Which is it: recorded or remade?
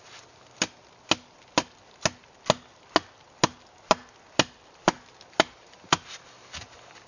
recorded